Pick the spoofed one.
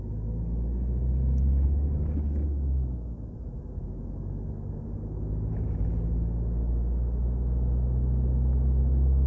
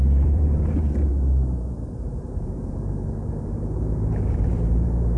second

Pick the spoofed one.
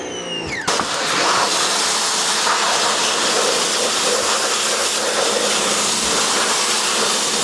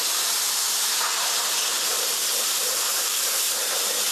second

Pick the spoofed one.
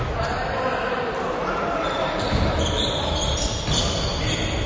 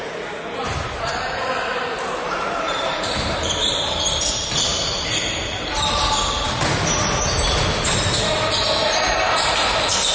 second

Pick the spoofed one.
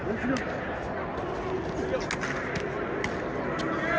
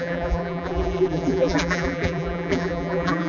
second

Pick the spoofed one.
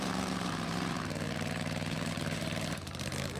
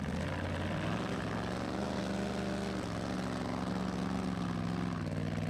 first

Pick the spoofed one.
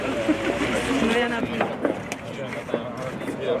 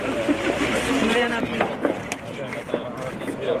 second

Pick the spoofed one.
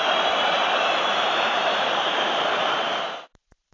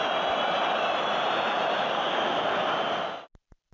first